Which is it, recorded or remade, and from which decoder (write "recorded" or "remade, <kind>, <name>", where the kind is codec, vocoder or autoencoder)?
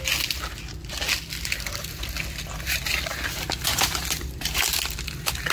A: recorded